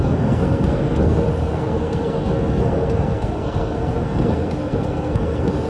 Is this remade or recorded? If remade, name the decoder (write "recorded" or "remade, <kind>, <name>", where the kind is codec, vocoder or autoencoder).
remade, codec, SNAC